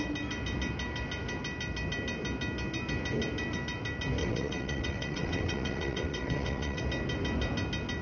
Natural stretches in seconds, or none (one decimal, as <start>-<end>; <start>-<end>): 0.0-4.2; 6.8-8.0